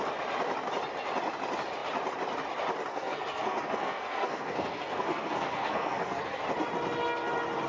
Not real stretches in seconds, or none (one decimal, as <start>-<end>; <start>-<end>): 2.9-6.4